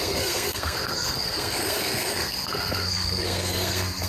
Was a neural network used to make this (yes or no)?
yes